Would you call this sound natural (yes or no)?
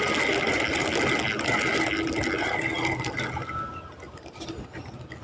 yes